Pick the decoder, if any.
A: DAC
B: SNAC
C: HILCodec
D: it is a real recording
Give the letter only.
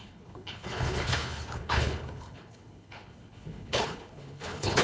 C